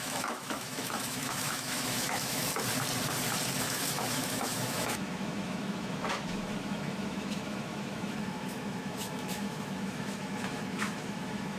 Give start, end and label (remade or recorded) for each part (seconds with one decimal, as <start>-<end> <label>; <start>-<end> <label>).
0.0-2.5 remade; 2.5-3.6 recorded; 3.6-11.6 remade